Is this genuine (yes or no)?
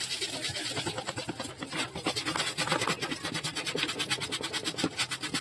yes